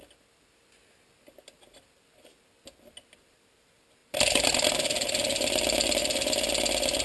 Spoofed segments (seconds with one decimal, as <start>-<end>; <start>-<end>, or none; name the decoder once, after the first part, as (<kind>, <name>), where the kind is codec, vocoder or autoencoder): 4.0-6.0 (vocoder, BigVGAN v2)